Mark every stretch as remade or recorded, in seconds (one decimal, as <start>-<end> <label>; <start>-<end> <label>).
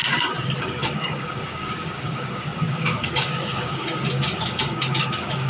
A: 0.0-0.6 recorded; 0.6-5.5 remade